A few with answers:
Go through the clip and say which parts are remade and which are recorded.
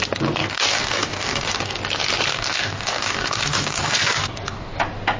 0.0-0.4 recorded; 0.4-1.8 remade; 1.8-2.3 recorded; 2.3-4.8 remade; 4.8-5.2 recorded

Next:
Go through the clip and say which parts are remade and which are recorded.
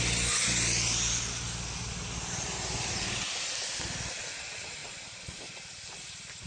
0.0-6.5 recorded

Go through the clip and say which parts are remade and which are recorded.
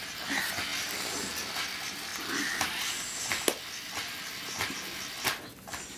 0.0-0.7 recorded; 0.7-1.6 remade; 1.6-6.0 recorded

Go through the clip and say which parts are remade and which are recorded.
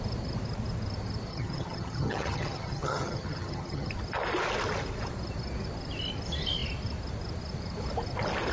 0.0-1.3 recorded; 1.3-3.9 remade; 3.9-8.5 recorded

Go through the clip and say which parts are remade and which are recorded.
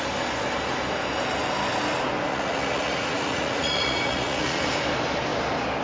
0.0-2.3 recorded; 2.3-4.6 remade; 4.6-5.8 recorded